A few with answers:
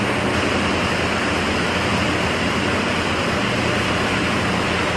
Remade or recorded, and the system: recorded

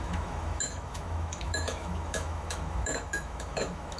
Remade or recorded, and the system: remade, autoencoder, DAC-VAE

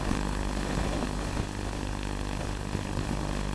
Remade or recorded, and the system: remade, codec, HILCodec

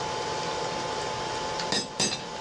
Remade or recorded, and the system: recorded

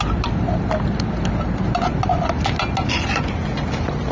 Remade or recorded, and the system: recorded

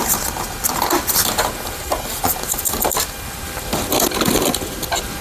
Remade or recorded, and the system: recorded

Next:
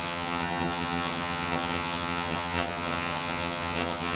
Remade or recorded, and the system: remade, vocoder, HiFi-GAN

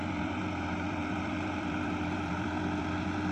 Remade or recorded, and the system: remade, vocoder, BigVGAN v2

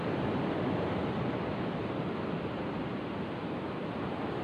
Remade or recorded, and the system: recorded